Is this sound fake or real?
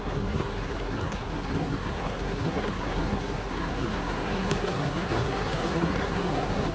fake